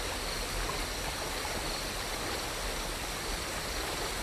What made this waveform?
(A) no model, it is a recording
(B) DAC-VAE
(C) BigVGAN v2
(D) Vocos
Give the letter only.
A